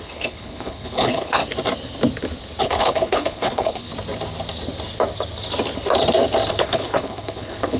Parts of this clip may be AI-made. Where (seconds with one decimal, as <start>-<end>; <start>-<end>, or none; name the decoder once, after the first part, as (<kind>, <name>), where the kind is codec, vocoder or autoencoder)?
0.0-1.4 (codec, HILCodec); 2.6-3.9; 6.5-7.8